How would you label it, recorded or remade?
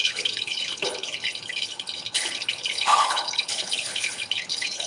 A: remade